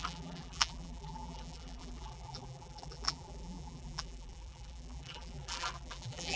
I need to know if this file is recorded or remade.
remade